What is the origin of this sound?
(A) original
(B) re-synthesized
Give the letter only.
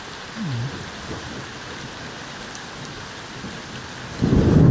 A